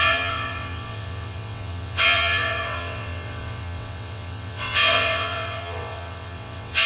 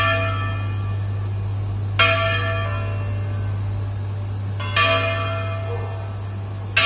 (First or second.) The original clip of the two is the second